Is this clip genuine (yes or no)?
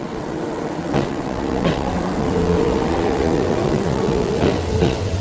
no